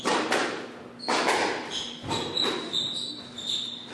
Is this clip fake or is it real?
real